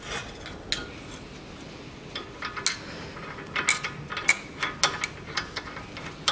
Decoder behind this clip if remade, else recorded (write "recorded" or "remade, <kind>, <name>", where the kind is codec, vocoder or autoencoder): recorded